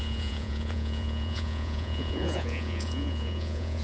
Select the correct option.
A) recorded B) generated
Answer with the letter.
B